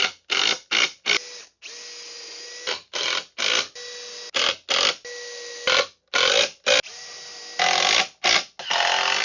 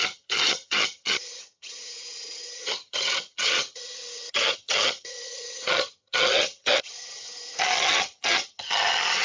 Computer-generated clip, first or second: second